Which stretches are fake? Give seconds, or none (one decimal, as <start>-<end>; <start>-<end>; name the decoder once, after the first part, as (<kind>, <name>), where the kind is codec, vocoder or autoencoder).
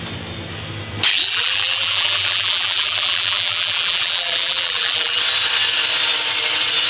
1.1-5.2 (vocoder, BigVGAN v2)